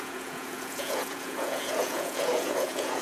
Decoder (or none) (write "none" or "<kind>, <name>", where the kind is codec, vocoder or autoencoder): vocoder, Vocos